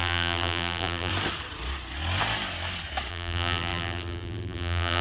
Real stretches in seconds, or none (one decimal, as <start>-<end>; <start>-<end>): 1.1-3.1